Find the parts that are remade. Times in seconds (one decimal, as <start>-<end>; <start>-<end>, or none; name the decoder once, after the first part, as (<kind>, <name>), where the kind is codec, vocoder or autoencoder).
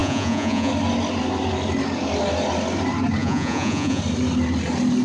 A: 0.0-0.7 (vocoder, Vocos); 3.2-4.0